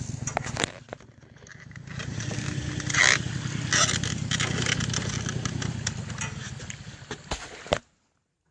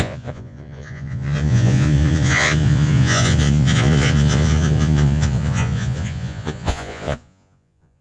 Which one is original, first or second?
first